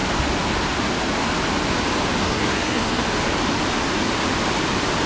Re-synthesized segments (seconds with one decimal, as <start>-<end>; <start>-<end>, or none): 2.2-3.0